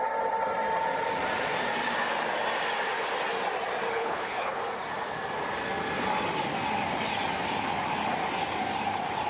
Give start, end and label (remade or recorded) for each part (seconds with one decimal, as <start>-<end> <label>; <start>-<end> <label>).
0.0-4.0 recorded; 4.0-4.6 remade; 4.6-9.3 recorded